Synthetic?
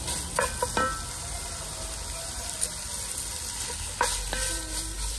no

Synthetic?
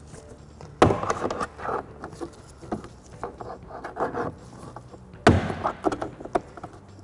no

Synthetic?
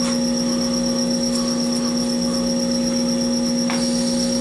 no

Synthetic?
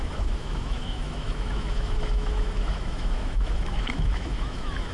yes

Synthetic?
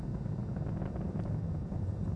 no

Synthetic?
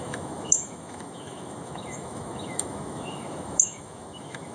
yes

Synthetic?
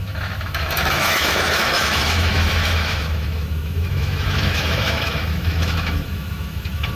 yes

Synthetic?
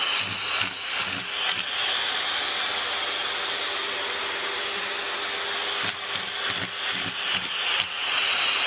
no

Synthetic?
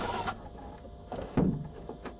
yes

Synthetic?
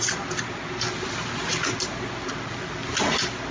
no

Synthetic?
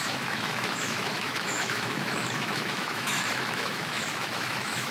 yes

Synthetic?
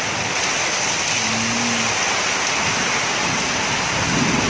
no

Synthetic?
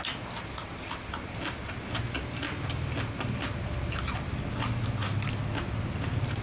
no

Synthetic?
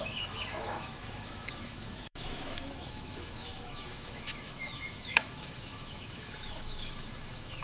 yes